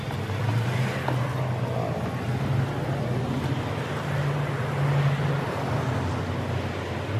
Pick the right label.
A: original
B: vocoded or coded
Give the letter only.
A